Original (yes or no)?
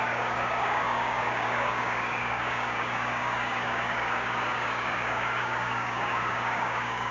no